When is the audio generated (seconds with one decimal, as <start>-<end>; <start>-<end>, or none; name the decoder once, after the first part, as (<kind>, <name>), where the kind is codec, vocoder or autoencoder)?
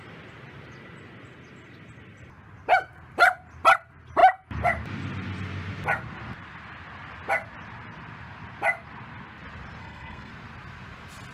9.8-10.3 (codec, SNAC)